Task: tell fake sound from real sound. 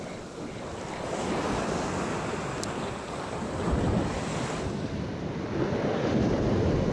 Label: real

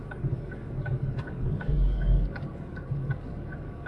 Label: fake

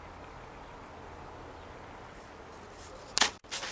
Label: real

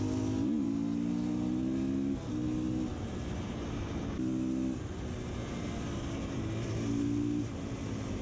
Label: real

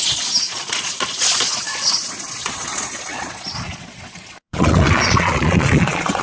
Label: fake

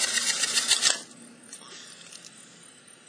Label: real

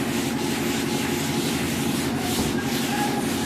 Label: real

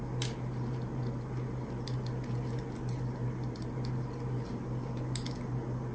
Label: real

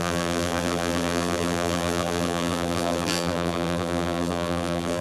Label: fake